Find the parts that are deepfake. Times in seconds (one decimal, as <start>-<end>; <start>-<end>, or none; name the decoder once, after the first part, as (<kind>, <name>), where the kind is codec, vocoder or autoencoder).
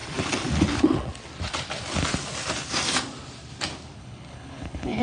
4.0-5.0 (codec, HILCodec)